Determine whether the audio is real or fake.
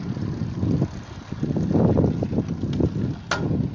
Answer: real